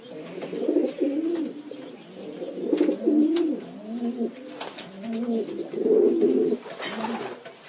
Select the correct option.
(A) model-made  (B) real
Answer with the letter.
B